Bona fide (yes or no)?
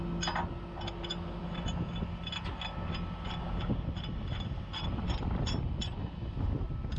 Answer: yes